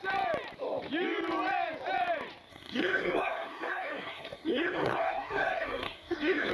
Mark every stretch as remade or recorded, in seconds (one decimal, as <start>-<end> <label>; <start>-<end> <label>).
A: 0.0-2.5 recorded; 2.5-6.5 remade